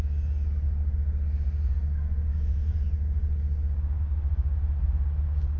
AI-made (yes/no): no